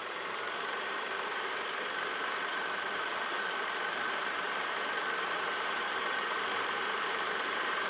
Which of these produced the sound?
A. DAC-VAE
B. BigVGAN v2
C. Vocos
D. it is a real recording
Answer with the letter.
B